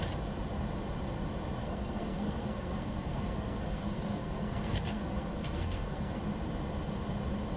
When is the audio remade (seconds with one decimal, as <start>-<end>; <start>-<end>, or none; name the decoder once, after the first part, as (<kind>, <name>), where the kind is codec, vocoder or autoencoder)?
1.6-6.2 (codec, SNAC)